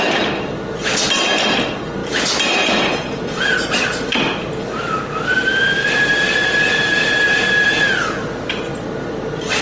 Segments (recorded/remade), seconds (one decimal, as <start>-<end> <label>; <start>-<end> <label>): 0.0-9.6 recorded